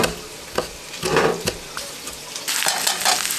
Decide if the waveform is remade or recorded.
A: recorded